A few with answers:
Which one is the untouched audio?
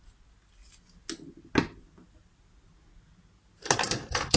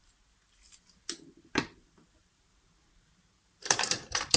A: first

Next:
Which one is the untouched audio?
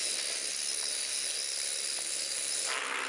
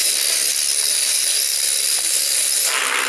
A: first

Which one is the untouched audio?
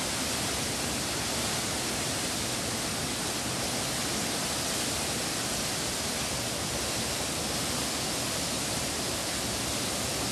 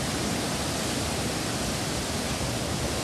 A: first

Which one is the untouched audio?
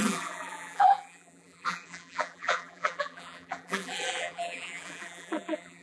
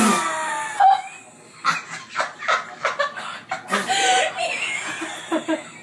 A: second